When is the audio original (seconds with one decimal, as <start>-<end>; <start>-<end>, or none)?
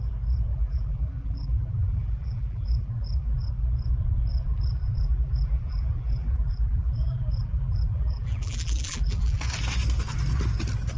0.0-0.5; 3.5-4.3; 9.4-11.0